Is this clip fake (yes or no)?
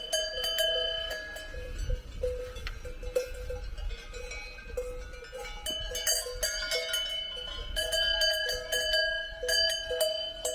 no